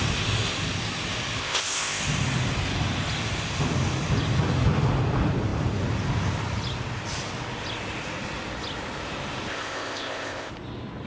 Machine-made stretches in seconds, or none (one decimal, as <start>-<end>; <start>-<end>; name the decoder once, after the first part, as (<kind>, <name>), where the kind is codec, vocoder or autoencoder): 1.4-2.0 (codec, ZipCodec); 9.5-10.5